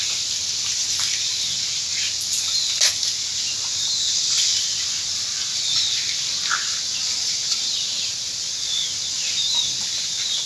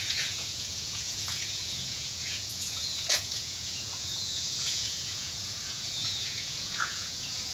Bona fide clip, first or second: first